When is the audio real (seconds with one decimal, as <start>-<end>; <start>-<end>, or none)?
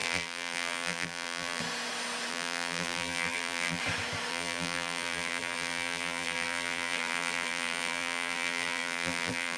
1.6-2.3; 3.8-4.3